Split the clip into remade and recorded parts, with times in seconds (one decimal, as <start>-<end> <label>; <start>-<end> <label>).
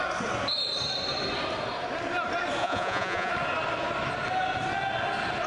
0.0-2.6 recorded; 2.6-3.3 remade; 3.3-5.5 recorded